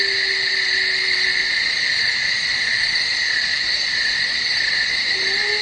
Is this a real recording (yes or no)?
yes